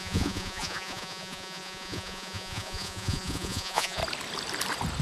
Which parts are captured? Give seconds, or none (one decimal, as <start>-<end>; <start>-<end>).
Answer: 4.0-5.0

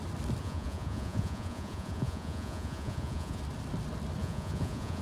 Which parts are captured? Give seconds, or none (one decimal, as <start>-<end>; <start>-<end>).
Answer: 0.0-0.4; 3.4-4.2

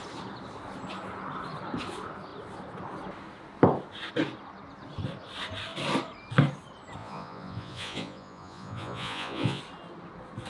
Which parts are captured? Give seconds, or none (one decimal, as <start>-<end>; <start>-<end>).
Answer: 0.0-7.0; 9.6-10.5

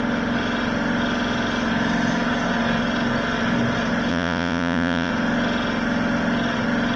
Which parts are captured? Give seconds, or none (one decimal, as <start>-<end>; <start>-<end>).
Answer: 0.0-4.1; 5.1-7.0

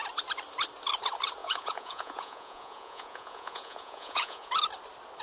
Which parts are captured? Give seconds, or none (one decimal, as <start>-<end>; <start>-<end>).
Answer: 0.0-1.4; 4.5-5.2

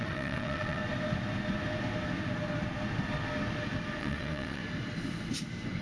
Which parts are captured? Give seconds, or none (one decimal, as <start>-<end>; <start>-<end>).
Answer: 0.8-4.0; 4.6-5.8

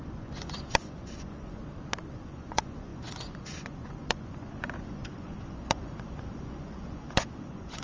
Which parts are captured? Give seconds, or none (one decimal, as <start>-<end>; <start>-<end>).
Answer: 1.6-2.1

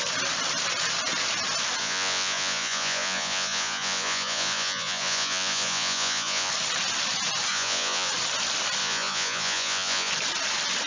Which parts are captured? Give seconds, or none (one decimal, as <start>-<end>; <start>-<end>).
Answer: 0.0-1.8; 6.5-7.5; 8.1-8.8; 10.1-10.9